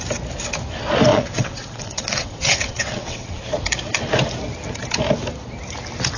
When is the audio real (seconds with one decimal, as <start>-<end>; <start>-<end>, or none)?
0.0-1.1; 3.4-6.2